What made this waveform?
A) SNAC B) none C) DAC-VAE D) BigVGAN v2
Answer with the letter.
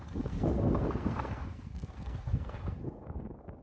A